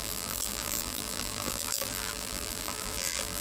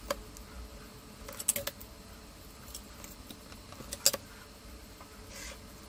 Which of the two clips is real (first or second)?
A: second